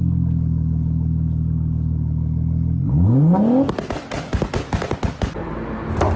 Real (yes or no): yes